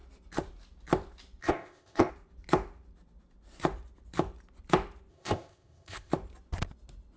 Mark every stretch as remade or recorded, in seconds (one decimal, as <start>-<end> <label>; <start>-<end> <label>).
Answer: 0.0-1.4 recorded; 1.4-2.1 remade; 2.1-5.1 recorded; 5.1-6.1 remade; 6.1-7.2 recorded